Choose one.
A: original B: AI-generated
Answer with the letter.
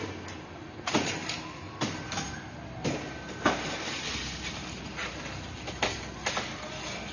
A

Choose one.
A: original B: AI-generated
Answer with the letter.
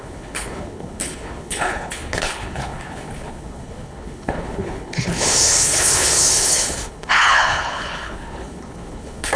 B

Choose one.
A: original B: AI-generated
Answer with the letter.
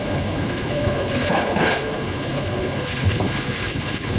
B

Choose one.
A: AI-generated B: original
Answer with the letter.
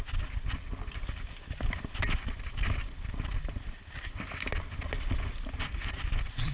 B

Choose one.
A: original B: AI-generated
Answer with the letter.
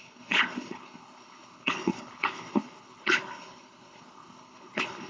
B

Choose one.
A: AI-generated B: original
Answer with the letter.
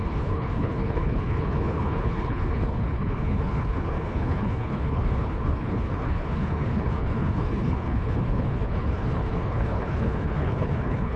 A